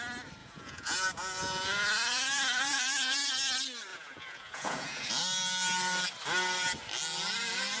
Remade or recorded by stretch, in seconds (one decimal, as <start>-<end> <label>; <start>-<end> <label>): 0.0-0.4 recorded; 0.4-3.3 remade; 3.3-3.9 recorded; 3.9-5.1 remade; 5.1-7.8 recorded